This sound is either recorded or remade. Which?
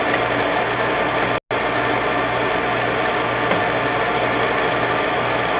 recorded